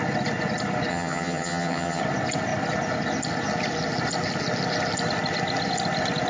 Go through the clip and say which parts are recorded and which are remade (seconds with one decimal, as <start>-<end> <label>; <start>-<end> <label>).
0.0-0.9 recorded; 0.9-2.0 remade; 2.0-6.3 recorded

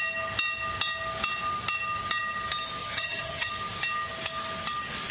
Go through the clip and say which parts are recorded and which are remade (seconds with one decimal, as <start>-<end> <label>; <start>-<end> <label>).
0.0-2.8 recorded; 2.8-3.5 remade; 3.5-5.1 recorded

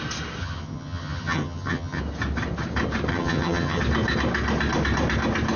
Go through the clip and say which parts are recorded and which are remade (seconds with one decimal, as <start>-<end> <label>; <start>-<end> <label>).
0.0-0.4 recorded; 0.4-2.0 remade; 2.0-3.1 recorded; 3.1-3.8 remade; 3.8-5.6 recorded

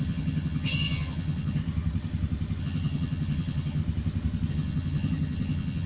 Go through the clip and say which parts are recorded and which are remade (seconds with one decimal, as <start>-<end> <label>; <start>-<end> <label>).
0.0-1.6 remade; 1.6-2.6 recorded; 2.6-3.8 remade; 3.8-4.5 recorded; 4.5-5.9 remade

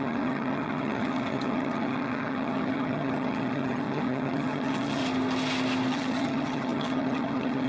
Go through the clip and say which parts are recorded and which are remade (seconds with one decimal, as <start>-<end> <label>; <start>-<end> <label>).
0.0-5.0 remade; 5.0-5.9 recorded; 5.9-7.7 remade